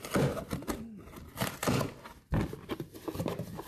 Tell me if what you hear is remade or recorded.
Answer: recorded